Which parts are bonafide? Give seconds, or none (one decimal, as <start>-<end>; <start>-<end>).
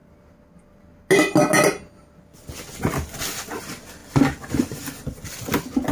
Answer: 0.0-5.9